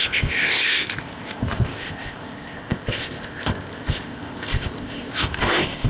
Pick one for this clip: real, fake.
fake